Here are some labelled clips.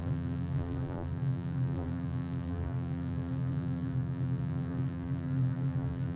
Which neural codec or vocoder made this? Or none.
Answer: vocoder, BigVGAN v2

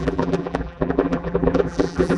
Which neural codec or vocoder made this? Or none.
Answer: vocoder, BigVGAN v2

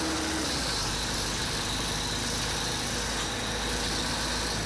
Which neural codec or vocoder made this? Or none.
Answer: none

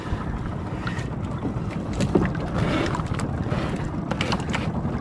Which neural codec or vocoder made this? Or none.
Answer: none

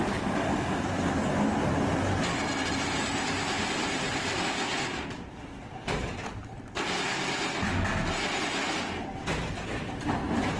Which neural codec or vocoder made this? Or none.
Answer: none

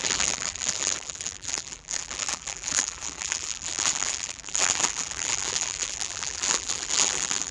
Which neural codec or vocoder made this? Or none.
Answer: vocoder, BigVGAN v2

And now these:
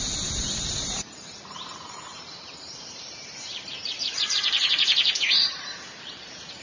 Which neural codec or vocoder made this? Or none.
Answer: vocoder, BigVGAN v2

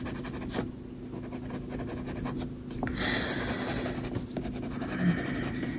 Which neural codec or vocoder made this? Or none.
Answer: none